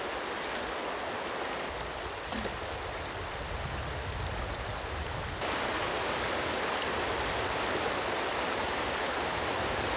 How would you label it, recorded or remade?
recorded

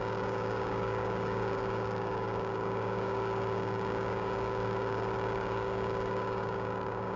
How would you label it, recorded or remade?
remade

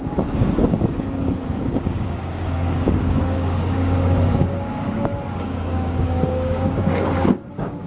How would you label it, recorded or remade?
remade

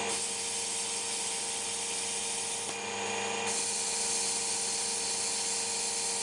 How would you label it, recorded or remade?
recorded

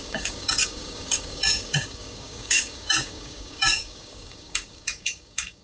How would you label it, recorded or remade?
remade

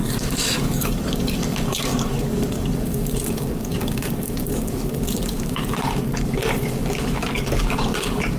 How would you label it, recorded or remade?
remade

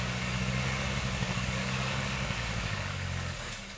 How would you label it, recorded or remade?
remade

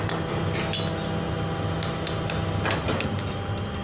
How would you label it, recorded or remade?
recorded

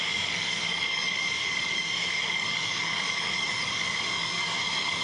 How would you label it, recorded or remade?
remade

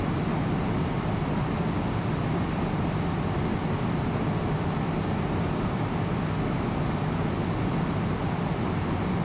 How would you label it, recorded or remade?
recorded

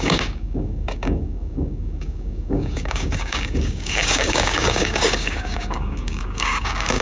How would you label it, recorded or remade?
remade